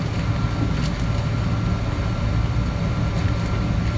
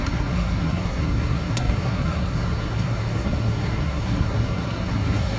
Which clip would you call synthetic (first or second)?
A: second